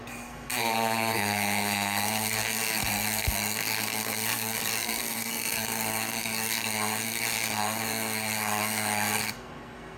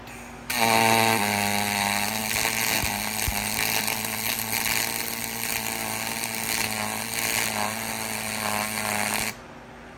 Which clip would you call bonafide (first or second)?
second